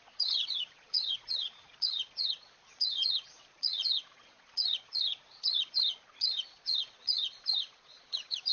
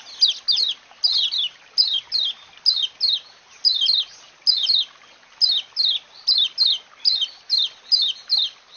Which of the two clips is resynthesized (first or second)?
first